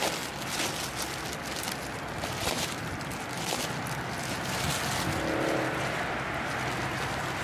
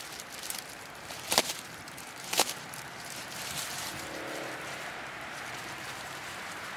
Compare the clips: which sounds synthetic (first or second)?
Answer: second